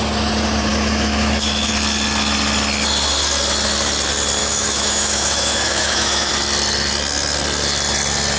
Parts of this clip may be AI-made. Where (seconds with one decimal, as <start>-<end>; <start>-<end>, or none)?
0.7-1.7; 4.4-6.3